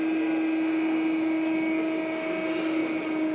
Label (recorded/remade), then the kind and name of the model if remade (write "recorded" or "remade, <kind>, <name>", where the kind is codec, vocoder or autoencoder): recorded